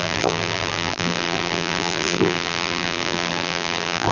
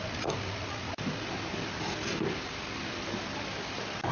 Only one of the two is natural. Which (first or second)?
second